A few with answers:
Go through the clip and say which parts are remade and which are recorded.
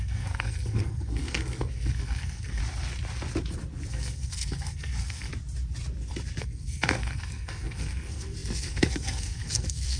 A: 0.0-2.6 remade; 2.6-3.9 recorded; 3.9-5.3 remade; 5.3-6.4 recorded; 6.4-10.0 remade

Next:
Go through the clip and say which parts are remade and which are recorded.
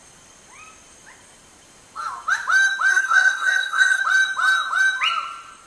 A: 0.0-2.9 recorded; 2.9-4.0 remade; 4.0-5.7 recorded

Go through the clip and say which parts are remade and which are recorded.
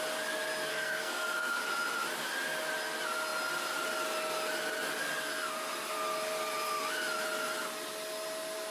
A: 0.0-0.7 recorded; 0.7-1.6 remade; 1.6-8.7 recorded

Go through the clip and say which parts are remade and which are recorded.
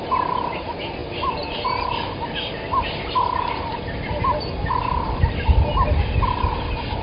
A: 0.0-7.0 recorded